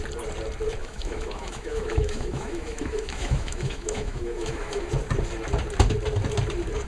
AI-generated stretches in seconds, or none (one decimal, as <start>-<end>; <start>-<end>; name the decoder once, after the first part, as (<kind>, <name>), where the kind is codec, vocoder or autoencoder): 0.8-4.9 (autoencoder, DAC-VAE)